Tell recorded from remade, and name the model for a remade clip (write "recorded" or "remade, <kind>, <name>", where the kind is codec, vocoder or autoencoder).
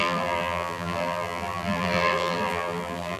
remade, vocoder, BigVGAN v2